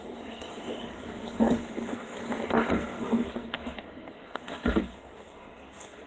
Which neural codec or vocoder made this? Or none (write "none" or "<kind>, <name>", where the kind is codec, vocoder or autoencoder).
codec, SNAC